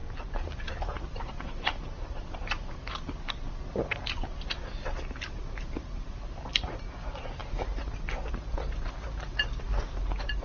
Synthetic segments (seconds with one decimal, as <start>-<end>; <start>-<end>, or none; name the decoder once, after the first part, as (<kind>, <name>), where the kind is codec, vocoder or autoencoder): 0.0-3.3 (vocoder, BigVGAN v2)